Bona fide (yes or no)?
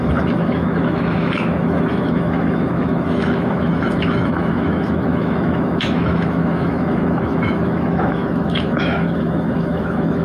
no